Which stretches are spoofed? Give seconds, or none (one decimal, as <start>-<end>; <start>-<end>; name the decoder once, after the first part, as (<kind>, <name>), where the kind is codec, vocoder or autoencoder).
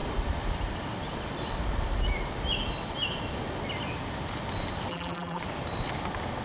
4.9-5.4 (vocoder, BigVGAN v2)